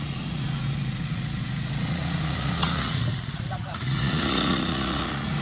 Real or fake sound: fake